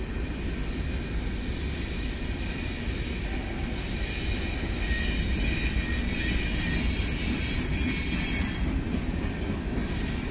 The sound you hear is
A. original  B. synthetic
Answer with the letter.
A